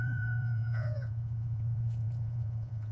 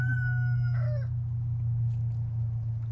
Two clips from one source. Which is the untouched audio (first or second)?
second